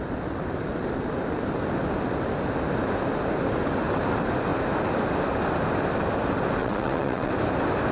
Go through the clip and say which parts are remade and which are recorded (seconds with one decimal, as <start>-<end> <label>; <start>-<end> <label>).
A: 0.0-6.6 recorded; 6.6-7.3 remade; 7.3-7.9 recorded